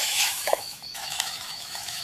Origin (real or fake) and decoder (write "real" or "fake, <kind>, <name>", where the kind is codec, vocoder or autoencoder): fake, autoencoder, DAC-VAE